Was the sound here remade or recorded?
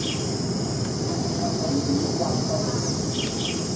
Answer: recorded